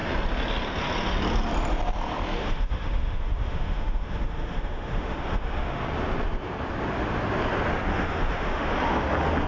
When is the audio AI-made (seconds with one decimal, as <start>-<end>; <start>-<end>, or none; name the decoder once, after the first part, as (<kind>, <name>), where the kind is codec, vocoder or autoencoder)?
2.4-5.8 (autoencoder, DAC-VAE); 7.9-8.7